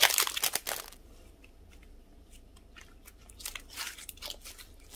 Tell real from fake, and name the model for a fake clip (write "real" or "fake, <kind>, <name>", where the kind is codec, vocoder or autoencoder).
real